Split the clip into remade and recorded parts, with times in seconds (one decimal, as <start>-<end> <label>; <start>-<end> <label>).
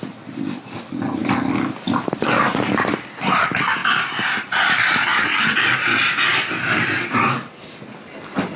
0.0-1.2 recorded; 1.2-2.9 remade; 2.9-3.8 recorded; 3.8-4.4 remade; 4.4-6.3 recorded; 6.3-7.1 remade; 7.1-8.6 recorded